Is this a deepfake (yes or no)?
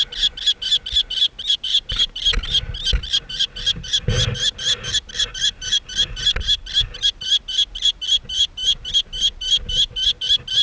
no